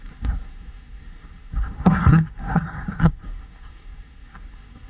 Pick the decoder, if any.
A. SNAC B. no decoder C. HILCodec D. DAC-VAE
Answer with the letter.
A